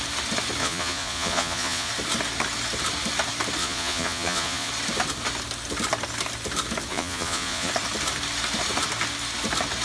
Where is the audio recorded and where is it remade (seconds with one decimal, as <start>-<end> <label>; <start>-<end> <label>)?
0.0-0.6 recorded; 0.6-1.9 remade; 1.9-3.6 recorded; 3.6-4.7 remade; 4.7-6.9 recorded; 6.9-7.7 remade; 7.7-9.8 recorded